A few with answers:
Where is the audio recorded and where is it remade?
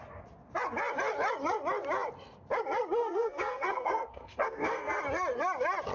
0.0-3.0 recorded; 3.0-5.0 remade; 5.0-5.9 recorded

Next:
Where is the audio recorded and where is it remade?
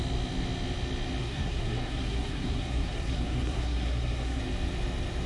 0.0-1.2 recorded; 1.2-4.4 remade; 4.4-5.3 recorded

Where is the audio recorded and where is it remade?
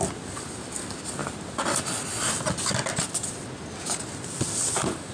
0.0-5.1 recorded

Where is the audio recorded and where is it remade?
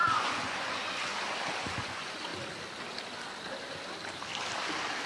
0.0-1.1 remade; 1.1-1.6 recorded; 1.6-2.3 remade; 2.3-5.1 recorded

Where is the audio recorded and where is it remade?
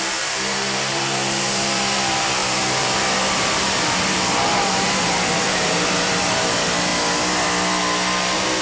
0.0-6.9 remade; 6.9-8.2 recorded; 8.2-8.6 remade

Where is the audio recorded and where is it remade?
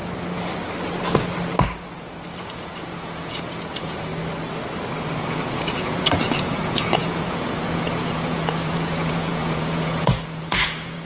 0.0-2.4 recorded; 2.4-4.1 remade; 4.1-5.2 recorded; 5.2-11.1 remade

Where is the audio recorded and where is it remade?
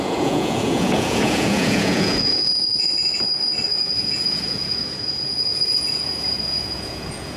0.0-2.9 remade; 2.9-3.7 recorded; 3.7-7.4 remade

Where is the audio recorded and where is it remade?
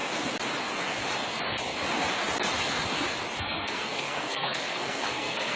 0.0-3.4 recorded; 3.4-5.6 remade